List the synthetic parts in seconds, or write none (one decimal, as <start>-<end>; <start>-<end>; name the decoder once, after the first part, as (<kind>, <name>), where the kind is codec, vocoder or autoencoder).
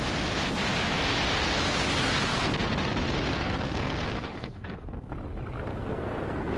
2.3-2.9 (codec, SNAC); 3.3-5.1; 5.7-6.6